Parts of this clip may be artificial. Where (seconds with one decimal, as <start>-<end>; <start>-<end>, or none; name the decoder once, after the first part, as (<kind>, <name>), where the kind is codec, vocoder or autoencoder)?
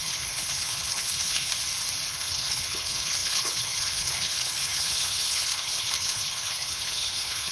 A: 0.0-1.5 (codec, HILCodec); 2.1-7.5